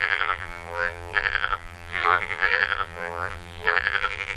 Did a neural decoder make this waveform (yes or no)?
yes